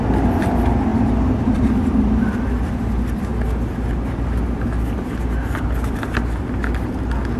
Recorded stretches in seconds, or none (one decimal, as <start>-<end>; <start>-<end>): 0.0-0.9; 2.7-7.4